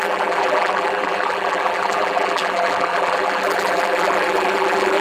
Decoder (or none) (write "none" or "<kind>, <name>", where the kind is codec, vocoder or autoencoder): vocoder, BigVGAN v2